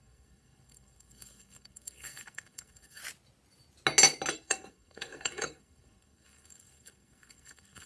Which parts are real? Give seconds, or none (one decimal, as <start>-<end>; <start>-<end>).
3.0-4.3